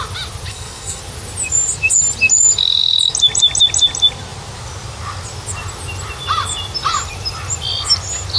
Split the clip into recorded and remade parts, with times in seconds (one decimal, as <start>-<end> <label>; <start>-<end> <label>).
0.0-0.5 recorded; 0.5-1.0 remade; 1.0-8.4 recorded

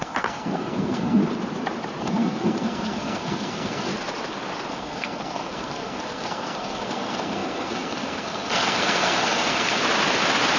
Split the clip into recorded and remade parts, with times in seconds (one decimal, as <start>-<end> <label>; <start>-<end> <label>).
0.0-1.2 remade; 1.2-2.0 recorded; 2.0-3.9 remade; 3.9-4.7 recorded; 4.7-9.8 remade; 9.8-10.6 recorded

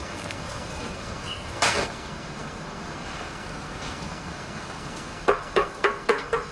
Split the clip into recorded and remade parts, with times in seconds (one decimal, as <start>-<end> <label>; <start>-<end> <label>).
0.0-6.5 remade

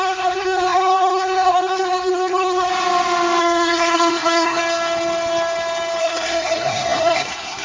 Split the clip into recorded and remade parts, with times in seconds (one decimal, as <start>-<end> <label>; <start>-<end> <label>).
0.0-2.7 remade; 2.7-3.4 recorded; 3.4-4.6 remade; 4.6-6.0 recorded; 6.0-7.6 remade

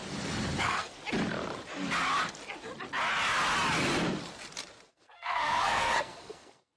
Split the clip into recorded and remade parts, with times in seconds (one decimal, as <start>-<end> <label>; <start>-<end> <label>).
0.0-0.6 recorded; 0.6-1.0 remade; 1.0-4.9 recorded; 4.9-6.8 remade